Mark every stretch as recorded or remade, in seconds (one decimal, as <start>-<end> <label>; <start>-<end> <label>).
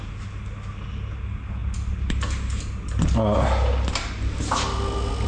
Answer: 0.0-5.3 recorded